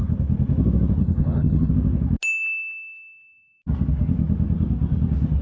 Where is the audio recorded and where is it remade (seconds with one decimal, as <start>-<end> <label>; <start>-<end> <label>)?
0.0-1.0 recorded; 1.0-1.7 remade; 1.7-5.4 recorded